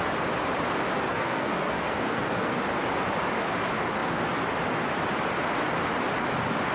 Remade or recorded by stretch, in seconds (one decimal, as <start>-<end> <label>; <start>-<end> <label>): 0.0-1.1 recorded; 1.1-2.6 remade; 2.6-6.7 recorded